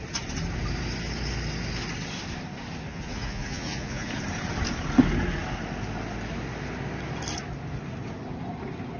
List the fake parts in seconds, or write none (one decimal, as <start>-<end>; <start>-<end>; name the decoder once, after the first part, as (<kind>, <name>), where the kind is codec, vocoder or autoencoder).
2.9-4.1 (vocoder, Vocos)